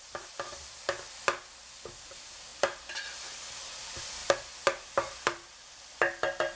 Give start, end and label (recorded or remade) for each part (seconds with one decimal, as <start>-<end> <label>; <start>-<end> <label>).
0.0-6.6 recorded